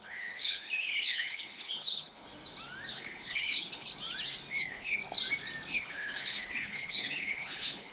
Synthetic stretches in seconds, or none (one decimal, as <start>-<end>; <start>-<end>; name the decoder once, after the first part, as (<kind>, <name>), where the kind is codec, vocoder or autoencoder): 0.0-2.3 (codec, HILCodec); 2.9-3.9; 4.5-5.0; 5.7-7.9